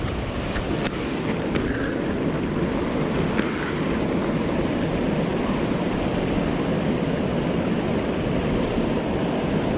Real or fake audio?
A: real